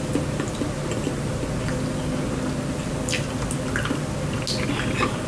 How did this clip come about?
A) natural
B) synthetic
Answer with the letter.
A